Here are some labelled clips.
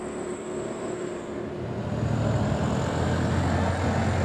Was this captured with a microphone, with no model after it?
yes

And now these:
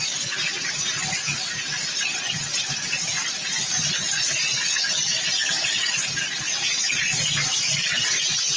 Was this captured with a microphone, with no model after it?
yes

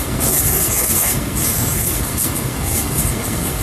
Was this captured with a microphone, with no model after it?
no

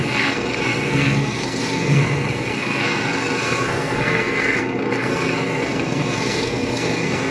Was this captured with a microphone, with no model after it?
no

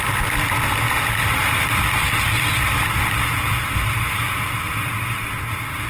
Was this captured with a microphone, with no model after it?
yes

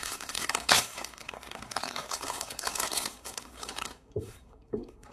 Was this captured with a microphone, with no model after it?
no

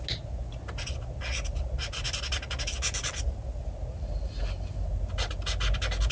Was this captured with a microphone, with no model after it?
yes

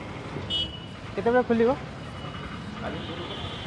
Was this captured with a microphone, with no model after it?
yes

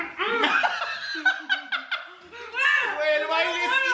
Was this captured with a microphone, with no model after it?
yes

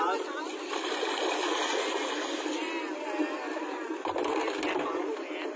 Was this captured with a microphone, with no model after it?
yes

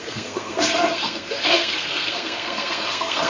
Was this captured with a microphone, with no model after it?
no